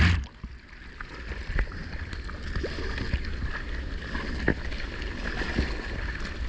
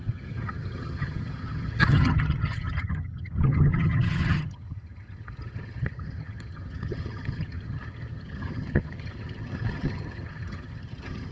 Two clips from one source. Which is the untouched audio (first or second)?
first